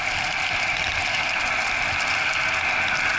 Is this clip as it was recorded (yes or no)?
yes